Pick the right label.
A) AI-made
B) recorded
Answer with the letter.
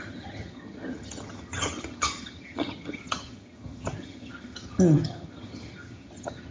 A